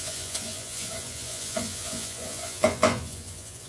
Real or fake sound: fake